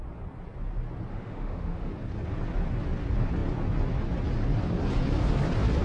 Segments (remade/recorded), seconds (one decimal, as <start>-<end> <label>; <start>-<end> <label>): 0.0-1.1 recorded; 1.1-1.9 remade; 1.9-5.8 recorded